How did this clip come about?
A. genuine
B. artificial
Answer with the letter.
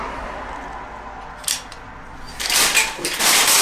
A